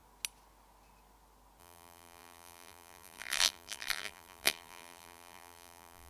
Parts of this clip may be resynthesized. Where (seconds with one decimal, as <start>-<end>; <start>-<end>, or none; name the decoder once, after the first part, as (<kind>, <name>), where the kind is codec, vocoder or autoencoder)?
1.6-6.1 (vocoder, BigVGAN v2)